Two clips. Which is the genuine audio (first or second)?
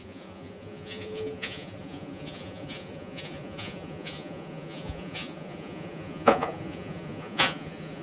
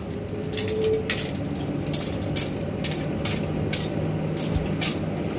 second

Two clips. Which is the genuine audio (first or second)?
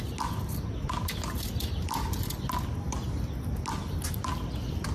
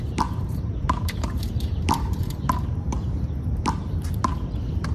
first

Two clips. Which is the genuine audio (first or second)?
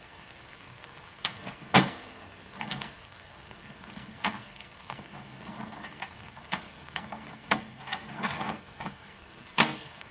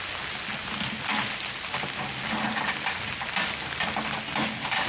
second